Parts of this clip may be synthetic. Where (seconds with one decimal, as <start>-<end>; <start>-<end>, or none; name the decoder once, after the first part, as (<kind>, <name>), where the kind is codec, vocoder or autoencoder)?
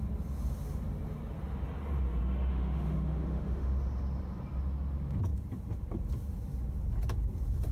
2.5-3.7 (autoencoder, DAC-VAE)